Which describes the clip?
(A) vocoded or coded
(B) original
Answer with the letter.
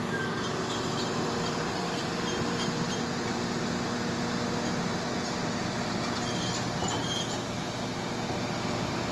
B